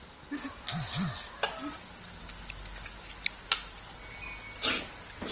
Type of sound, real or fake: real